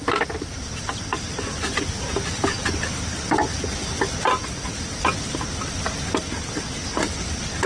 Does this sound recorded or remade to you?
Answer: recorded